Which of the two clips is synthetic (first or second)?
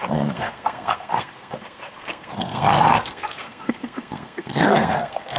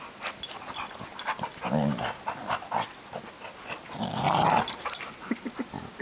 first